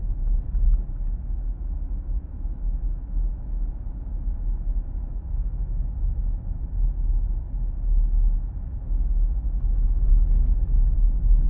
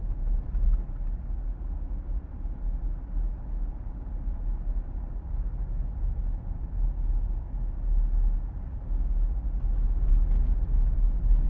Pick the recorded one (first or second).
second